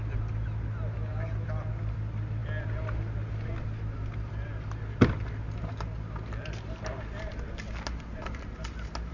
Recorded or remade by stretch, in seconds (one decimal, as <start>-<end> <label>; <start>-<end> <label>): 0.0-9.1 recorded